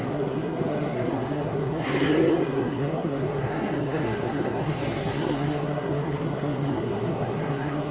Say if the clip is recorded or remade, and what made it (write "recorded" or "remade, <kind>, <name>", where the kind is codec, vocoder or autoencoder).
remade, codec, SNAC